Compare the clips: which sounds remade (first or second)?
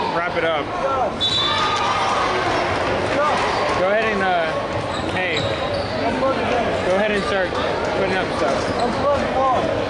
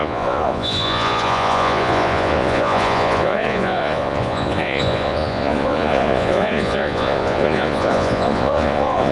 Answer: second